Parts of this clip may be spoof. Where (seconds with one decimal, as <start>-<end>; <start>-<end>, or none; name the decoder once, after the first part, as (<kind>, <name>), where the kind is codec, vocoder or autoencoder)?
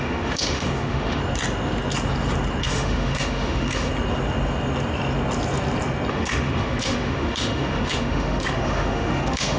0.0-1.2 (autoencoder, DAC-VAE); 2.6-3.9; 6.1-9.6